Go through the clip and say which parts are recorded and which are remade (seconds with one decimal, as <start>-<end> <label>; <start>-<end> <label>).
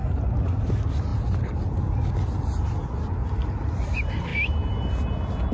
0.0-0.7 remade; 0.7-1.1 recorded; 1.1-2.1 remade; 2.1-5.5 recorded